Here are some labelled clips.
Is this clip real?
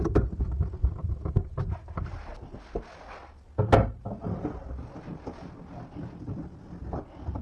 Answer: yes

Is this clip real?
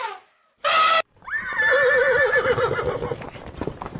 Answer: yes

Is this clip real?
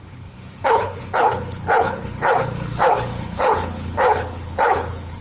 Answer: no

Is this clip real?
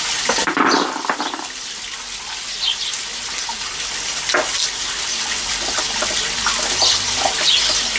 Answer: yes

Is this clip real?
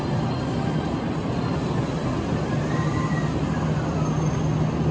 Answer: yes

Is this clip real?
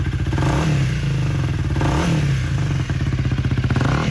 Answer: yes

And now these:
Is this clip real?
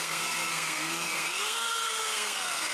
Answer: no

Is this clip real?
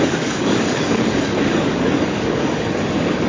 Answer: no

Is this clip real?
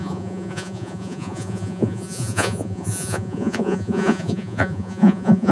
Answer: no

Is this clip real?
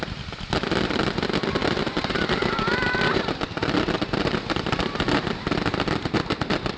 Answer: no